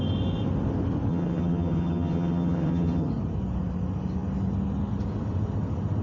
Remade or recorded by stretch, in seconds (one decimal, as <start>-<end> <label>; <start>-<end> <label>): 0.0-1.1 recorded; 1.1-3.1 remade; 3.1-6.0 recorded